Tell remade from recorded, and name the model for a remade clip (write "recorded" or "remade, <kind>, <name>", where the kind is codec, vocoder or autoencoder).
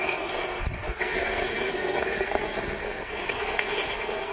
remade, codec, SNAC